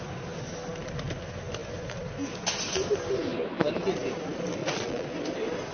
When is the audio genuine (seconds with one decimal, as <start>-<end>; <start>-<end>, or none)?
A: 0.0-4.6; 5.1-5.7